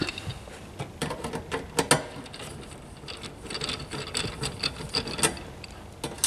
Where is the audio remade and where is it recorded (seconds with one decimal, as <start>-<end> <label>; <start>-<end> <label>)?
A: 0.0-6.3 recorded